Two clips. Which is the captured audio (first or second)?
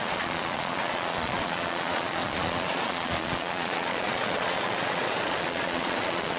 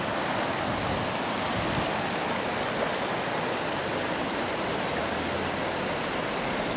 second